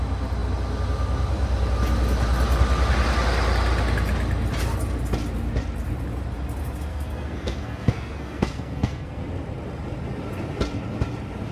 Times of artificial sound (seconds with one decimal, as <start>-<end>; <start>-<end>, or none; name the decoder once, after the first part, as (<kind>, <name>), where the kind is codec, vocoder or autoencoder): 6.9-9.2 (codec, SNAC)